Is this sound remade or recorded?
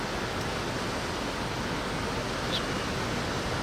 recorded